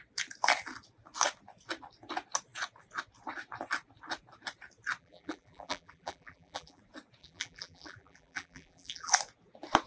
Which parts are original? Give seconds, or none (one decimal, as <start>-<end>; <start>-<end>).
0.0-5.0; 6.8-7.2; 9.1-9.9